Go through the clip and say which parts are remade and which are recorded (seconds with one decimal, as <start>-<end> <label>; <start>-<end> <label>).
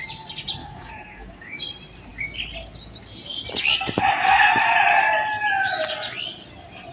0.0-0.6 recorded; 0.6-1.6 remade; 1.6-6.9 recorded